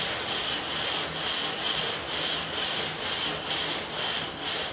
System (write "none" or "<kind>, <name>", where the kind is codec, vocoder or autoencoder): none